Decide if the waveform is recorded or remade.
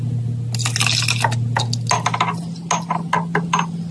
recorded